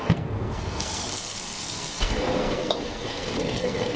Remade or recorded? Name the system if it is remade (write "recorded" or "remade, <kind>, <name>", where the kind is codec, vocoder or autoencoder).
remade, codec, SNAC